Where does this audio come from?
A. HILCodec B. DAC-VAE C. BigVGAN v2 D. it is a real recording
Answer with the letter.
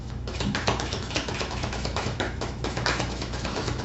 B